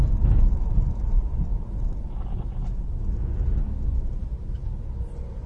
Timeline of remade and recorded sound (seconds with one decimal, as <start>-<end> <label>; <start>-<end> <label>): 0.0-5.5 recorded